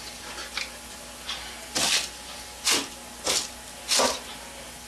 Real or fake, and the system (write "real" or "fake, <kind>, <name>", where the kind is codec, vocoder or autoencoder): real